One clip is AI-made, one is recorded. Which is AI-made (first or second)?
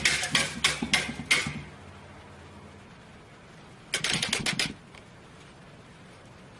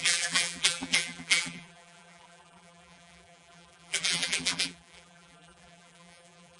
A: second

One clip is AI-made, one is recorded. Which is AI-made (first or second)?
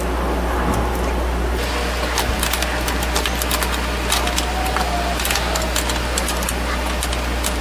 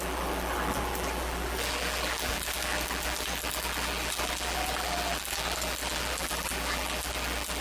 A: second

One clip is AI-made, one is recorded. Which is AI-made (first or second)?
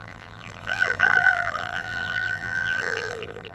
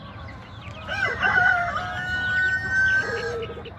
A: first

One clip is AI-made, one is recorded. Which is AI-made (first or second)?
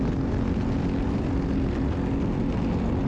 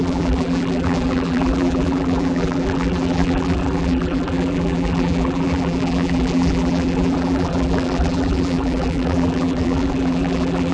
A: second